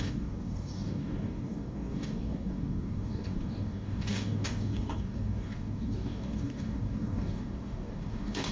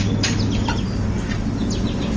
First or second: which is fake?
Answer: first